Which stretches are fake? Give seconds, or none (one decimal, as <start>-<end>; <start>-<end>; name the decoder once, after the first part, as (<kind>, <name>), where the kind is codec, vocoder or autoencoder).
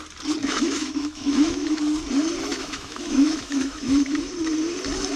0.4-1.8 (autoencoder, DAC-VAE); 2.5-4.3